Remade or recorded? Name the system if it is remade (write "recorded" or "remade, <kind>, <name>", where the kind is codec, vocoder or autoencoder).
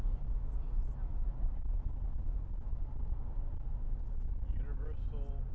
recorded